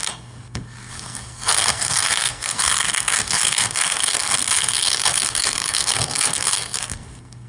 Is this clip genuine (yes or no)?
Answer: no